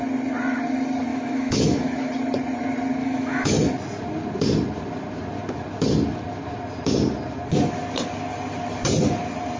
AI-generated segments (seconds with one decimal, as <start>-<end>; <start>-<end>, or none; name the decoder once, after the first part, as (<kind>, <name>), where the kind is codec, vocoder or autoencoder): 1.1-2.1 (autoencoder, DAC-VAE); 3.0-3.7